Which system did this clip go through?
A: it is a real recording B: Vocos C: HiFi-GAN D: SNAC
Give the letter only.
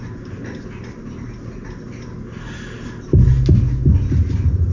A